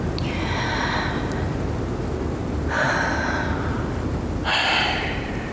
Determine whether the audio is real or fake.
real